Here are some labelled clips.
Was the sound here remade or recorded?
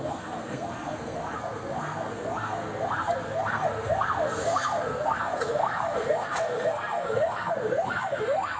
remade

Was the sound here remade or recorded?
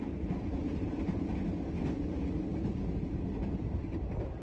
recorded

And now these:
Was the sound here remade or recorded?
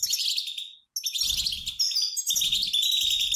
recorded